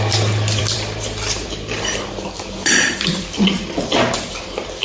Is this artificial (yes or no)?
yes